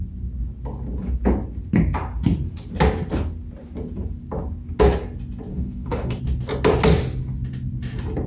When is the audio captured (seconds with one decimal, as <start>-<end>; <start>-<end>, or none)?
0.0-5.5; 6.2-8.3